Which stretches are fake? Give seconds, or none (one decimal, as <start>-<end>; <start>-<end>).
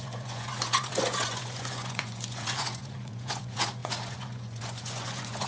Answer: 0.0-5.5